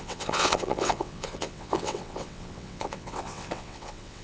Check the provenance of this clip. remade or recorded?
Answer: remade